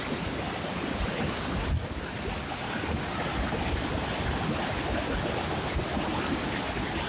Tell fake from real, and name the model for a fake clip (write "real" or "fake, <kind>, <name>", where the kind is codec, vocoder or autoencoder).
real